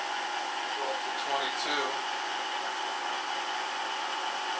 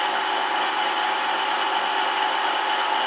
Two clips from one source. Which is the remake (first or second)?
first